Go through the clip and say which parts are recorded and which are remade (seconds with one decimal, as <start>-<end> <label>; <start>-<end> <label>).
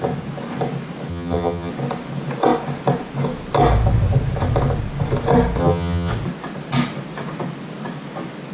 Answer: 0.0-1.1 recorded; 1.1-1.7 remade; 1.7-5.6 recorded; 5.6-6.1 remade; 6.1-8.5 recorded